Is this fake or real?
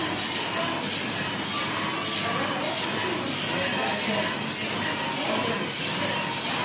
real